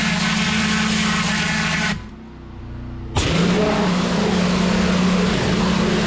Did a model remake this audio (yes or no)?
no